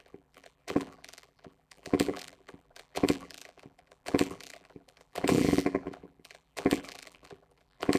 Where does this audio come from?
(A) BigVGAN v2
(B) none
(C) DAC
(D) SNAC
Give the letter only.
A